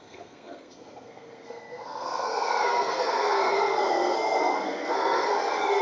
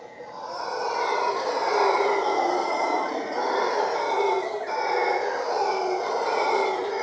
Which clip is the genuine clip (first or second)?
second